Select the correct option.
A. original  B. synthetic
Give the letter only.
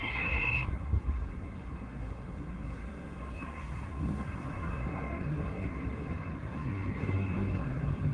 B